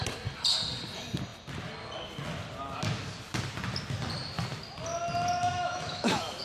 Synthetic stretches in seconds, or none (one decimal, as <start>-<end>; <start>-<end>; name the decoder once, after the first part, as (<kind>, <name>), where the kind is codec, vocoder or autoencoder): 5.4-6.4 (autoencoder, DAC-VAE)